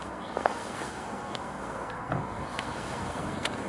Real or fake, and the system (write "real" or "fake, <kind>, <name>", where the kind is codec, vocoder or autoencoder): fake, codec, SNAC